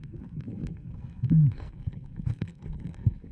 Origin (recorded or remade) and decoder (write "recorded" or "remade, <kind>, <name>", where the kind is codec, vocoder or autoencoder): remade, codec, SNAC